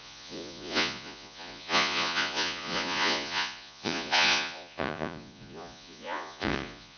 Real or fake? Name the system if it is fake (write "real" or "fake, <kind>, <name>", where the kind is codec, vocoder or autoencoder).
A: fake, vocoder, Vocos